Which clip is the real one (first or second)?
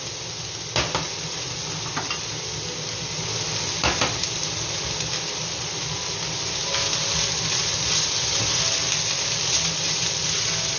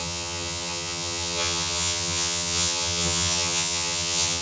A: first